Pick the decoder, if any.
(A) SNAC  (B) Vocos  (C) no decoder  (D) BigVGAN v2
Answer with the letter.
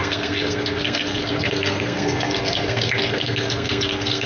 A